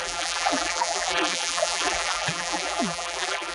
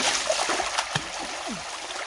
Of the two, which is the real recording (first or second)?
second